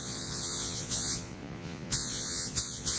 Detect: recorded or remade remade